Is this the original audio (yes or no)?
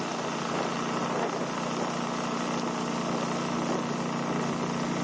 yes